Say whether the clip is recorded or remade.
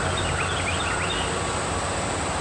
recorded